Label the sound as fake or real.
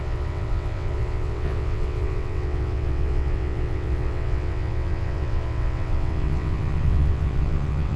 fake